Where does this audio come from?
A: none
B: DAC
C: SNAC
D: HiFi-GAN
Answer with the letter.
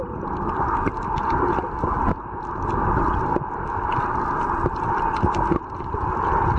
A